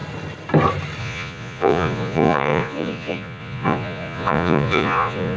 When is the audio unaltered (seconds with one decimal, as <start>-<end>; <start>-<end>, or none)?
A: 0.0-1.0